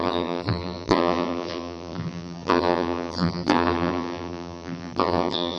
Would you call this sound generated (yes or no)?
yes